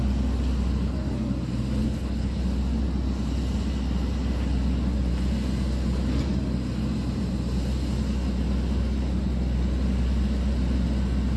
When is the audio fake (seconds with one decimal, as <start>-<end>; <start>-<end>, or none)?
1.8-2.4